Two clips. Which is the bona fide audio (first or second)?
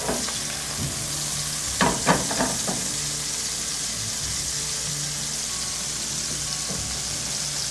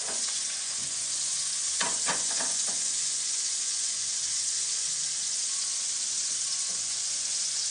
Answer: first